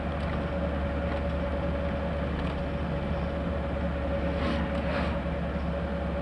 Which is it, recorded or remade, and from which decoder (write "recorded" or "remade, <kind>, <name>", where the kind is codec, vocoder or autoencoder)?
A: recorded